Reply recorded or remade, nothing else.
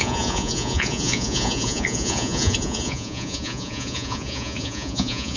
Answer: remade